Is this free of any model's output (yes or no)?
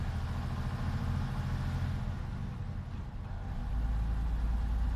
yes